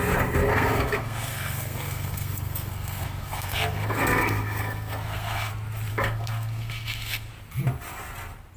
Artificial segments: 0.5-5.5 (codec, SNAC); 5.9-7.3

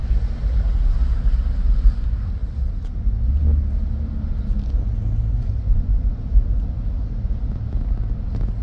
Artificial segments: 5.3-6.1 (vocoder, Vocos)

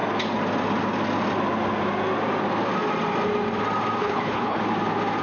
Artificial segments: 4.0-4.6 (codec, HILCodec)

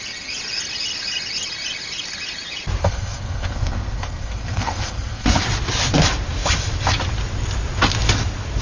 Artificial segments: 2.8-5.4 (codec, SNAC)

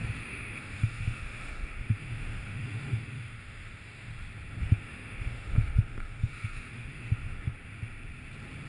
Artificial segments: 0.0-4.1 (autoencoder, DAC-VAE); 4.6-7.5

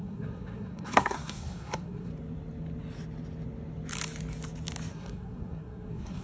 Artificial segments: 0.0-2.1 (codec, SNAC); 4.9-6.2

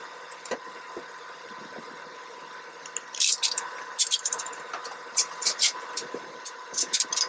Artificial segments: 0.0-2.4 (vocoder, BigVGAN v2); 3.1-7.3